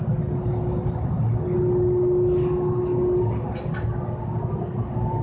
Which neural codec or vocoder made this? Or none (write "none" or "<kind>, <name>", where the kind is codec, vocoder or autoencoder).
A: none